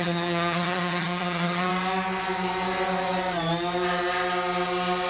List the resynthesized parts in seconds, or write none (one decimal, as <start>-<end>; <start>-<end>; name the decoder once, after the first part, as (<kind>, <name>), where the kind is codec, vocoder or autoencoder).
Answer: 0.0-1.7 (vocoder, HiFi-GAN)